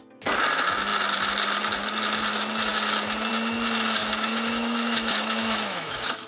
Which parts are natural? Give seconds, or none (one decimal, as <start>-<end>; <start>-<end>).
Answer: 0.0-4.0